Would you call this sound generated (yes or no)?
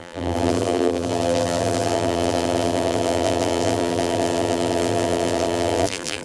yes